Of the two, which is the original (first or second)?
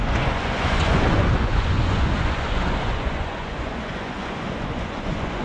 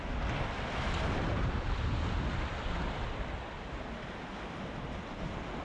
second